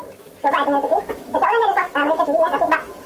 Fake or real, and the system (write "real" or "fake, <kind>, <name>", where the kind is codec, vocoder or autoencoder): fake, autoencoder, DAC-VAE